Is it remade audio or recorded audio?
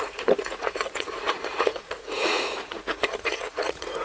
remade